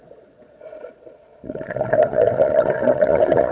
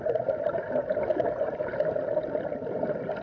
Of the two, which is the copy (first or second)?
first